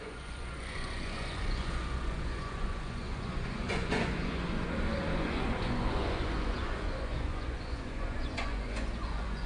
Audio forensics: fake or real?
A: fake